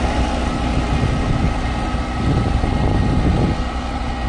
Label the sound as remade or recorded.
recorded